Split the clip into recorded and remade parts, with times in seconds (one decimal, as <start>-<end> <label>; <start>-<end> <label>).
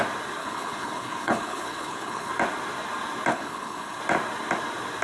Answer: 0.0-0.4 recorded; 0.4-2.3 remade; 2.3-3.3 recorded; 3.3-4.0 remade; 4.0-5.0 recorded